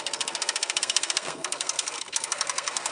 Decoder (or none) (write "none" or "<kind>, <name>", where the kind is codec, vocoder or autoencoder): codec, SNAC